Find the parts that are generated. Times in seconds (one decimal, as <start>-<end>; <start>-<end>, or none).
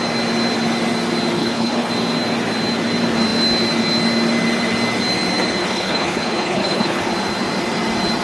1.4-1.9; 5.6-7.0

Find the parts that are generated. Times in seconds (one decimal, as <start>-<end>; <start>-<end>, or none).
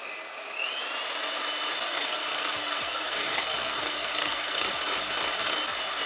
1.9-4.7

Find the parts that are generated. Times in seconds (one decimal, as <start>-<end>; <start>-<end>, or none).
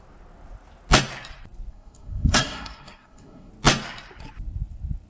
1.7-3.5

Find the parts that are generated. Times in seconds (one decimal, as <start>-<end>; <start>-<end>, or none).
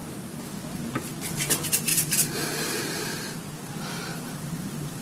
4.1-5.0